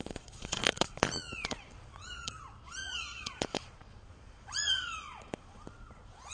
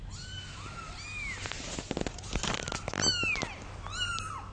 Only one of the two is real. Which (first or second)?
second